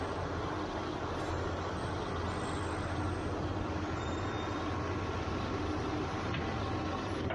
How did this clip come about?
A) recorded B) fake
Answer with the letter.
A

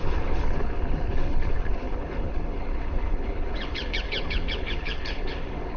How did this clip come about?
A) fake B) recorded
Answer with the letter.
A